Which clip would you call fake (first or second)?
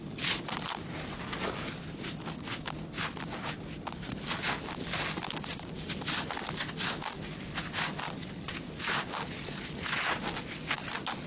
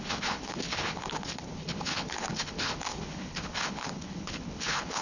second